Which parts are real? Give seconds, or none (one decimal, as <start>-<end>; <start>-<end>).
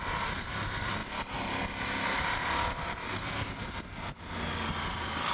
0.0-5.3